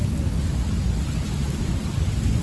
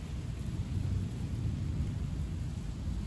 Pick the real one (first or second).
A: second